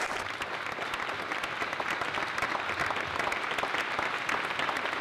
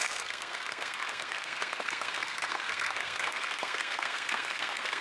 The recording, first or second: first